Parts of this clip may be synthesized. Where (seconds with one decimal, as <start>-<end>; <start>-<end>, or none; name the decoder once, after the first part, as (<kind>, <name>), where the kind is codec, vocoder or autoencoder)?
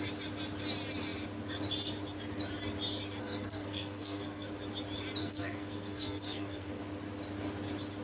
3.2-4.5 (codec, SNAC); 5.2-6.8